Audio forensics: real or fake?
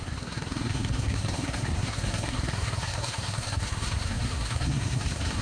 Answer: fake